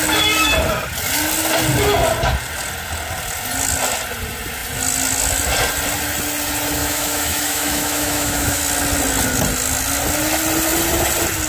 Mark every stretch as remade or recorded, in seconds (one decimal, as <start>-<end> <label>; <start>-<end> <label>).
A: 0.0-6.8 recorded; 6.8-8.6 remade; 8.6-11.5 recorded